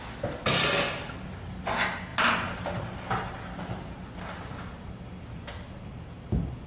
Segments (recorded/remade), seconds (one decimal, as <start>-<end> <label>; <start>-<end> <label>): 0.0-6.7 recorded